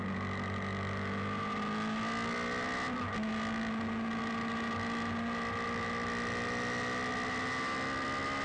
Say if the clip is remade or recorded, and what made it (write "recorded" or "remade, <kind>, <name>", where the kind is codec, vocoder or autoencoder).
recorded